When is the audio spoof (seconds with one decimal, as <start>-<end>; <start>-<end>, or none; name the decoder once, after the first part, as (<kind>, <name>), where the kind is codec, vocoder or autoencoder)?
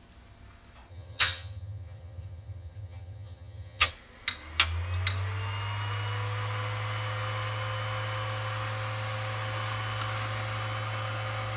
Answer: 0.9-3.9 (vocoder, HiFi-GAN)